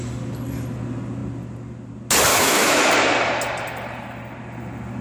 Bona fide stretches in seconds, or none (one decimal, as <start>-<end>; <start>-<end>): 0.0-2.3; 2.9-5.0